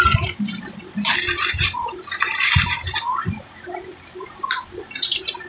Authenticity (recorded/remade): remade